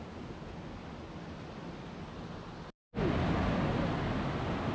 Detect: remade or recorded recorded